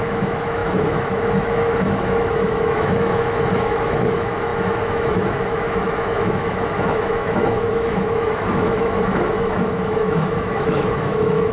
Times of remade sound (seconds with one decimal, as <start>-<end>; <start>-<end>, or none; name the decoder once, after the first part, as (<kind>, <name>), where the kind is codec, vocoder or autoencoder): 0.0-11.5 (autoencoder, DAC-VAE)